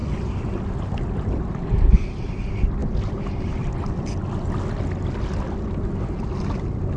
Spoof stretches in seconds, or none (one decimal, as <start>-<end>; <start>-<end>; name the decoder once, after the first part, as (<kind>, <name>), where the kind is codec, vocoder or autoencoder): none